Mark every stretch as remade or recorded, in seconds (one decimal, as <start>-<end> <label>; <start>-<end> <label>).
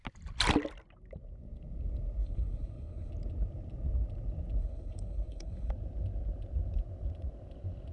0.0-2.2 recorded; 2.2-3.1 remade; 3.1-4.6 recorded; 4.6-5.7 remade; 5.7-7.9 recorded